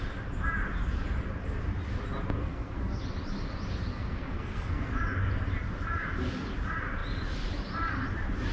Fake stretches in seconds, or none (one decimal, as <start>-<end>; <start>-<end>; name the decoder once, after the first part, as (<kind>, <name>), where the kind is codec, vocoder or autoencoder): 2.4-3.0 (codec, SNAC); 3.9-4.9